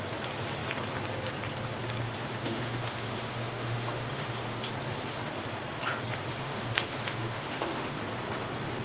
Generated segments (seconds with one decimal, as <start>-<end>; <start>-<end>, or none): 2.2-4.7; 6.3-8.0